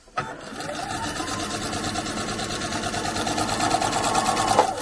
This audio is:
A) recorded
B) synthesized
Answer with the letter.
A